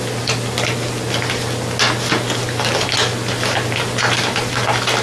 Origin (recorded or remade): recorded